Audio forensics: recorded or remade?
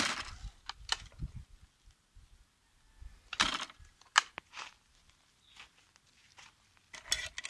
recorded